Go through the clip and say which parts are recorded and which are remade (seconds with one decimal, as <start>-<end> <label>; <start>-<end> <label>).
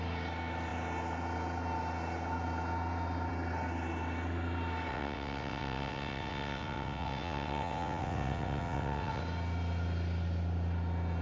0.0-4.9 recorded; 4.9-9.2 remade; 9.2-11.2 recorded